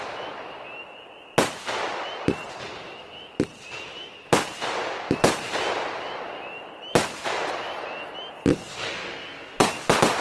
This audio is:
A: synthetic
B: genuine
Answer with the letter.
B